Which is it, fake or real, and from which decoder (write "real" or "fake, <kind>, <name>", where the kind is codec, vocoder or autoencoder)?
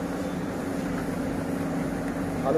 fake, vocoder, BigVGAN v2